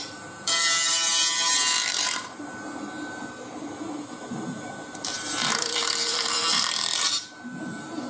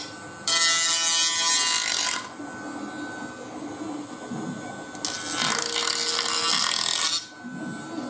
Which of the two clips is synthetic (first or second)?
first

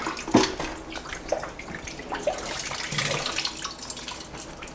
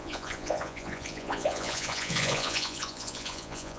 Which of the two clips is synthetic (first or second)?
second